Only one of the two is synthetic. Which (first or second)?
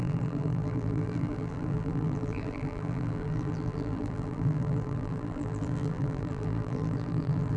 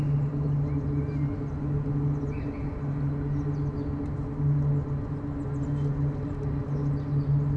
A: first